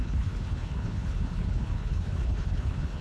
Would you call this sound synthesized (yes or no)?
yes